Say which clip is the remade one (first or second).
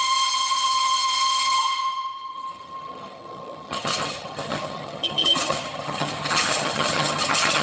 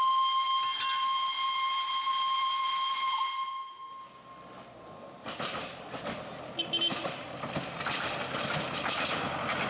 first